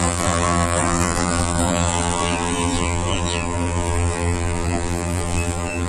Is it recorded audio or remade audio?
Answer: remade